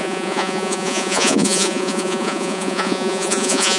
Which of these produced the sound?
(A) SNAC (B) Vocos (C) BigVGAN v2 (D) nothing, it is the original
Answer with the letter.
B